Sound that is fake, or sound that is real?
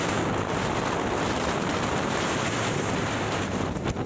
real